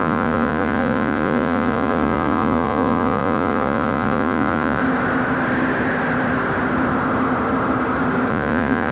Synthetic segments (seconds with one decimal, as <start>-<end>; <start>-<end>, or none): 0.0-4.8; 8.3-8.9